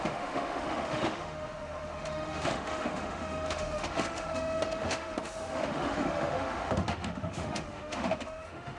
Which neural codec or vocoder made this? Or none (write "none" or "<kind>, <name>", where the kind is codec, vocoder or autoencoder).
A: autoencoder, DAC-VAE